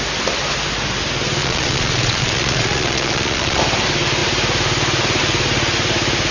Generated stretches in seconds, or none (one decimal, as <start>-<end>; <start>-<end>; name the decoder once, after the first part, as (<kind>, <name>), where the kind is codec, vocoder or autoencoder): 1.4-3.6 (vocoder, Vocos)